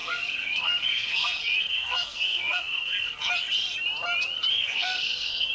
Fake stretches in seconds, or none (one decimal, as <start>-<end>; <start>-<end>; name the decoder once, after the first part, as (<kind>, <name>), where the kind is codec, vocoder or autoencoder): 0.0-3.3 (codec, SNAC); 4.5-5.5